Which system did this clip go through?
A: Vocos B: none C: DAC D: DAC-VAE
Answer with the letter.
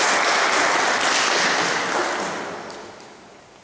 B